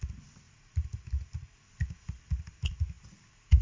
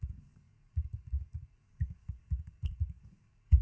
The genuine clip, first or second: first